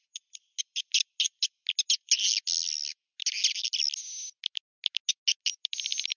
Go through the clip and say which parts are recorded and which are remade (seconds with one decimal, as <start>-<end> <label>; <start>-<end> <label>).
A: 0.0-6.2 recorded